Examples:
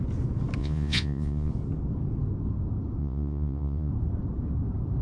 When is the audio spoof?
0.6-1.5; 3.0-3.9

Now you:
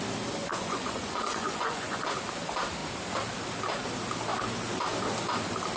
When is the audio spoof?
0.4-2.0

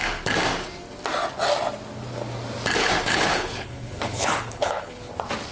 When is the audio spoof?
2.8-5.1

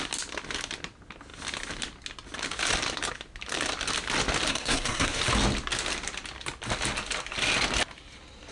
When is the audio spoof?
4.5-5.2

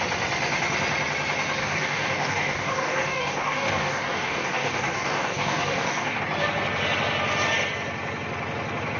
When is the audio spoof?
1.6-6.2

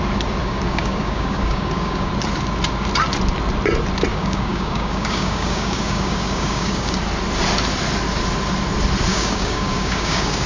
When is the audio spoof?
0.4-2.1; 4.1-7.0; 9.1-10.5

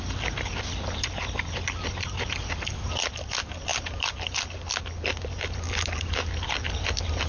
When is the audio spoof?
none

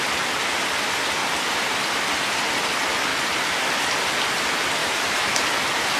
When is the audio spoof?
4.8-5.4